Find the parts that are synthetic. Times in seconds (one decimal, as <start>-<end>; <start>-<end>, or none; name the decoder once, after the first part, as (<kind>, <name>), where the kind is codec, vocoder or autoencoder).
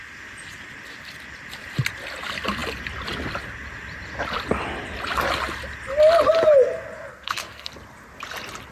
7.1-7.7 (codec, SNAC)